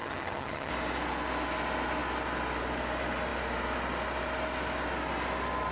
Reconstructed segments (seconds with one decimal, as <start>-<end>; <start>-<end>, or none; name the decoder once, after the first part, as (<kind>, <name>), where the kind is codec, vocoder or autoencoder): 0.0-0.7 (vocoder, HiFi-GAN)